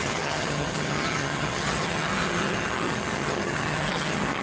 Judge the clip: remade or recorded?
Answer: remade